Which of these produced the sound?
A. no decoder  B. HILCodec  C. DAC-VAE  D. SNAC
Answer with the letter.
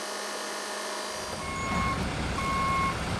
A